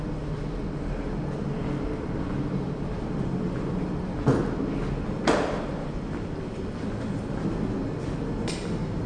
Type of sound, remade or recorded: recorded